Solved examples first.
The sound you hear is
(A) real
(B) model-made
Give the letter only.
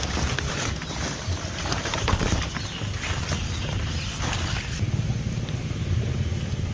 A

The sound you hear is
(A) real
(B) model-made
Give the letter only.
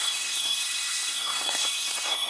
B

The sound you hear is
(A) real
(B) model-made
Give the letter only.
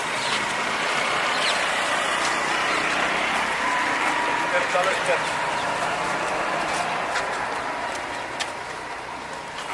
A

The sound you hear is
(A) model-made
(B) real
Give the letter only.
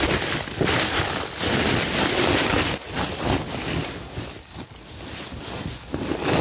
B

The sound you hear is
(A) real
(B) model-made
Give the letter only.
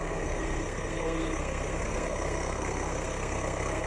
B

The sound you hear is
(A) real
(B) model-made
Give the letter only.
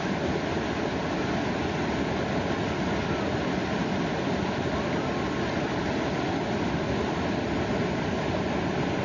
A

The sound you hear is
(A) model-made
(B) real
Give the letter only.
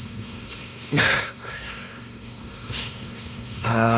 A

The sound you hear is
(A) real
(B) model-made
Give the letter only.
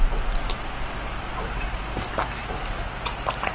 A